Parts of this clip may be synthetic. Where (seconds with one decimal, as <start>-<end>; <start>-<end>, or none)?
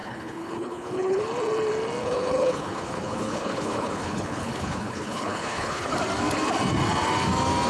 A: 0.0-1.2; 2.0-5.9